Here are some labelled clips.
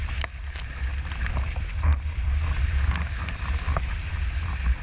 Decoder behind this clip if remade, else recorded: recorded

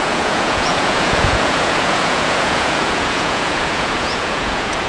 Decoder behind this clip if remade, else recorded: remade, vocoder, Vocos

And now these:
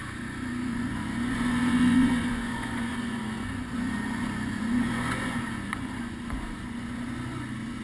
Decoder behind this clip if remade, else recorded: remade, vocoder, Vocos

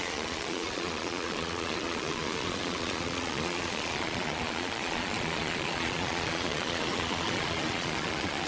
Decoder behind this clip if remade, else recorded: remade, vocoder, Vocos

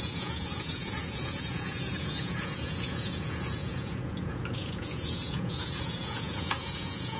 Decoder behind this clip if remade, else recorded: remade, vocoder, Vocos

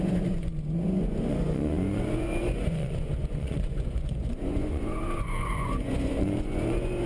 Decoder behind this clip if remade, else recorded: remade, vocoder, Vocos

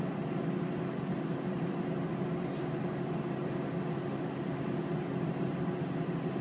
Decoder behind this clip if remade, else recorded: recorded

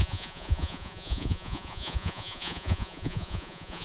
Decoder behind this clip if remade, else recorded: remade, vocoder, Vocos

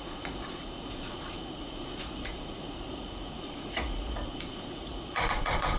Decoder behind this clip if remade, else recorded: remade, vocoder, Vocos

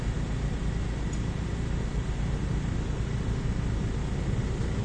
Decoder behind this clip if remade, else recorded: recorded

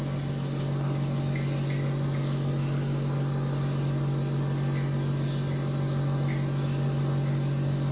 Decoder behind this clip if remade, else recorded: recorded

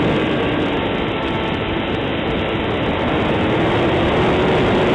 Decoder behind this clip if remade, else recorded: recorded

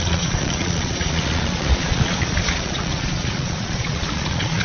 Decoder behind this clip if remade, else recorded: remade, vocoder, Vocos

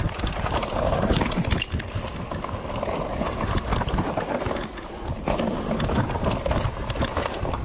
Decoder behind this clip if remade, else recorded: recorded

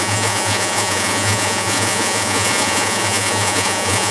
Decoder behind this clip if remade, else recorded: remade, vocoder, Vocos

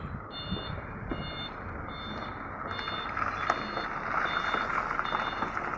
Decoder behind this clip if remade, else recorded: recorded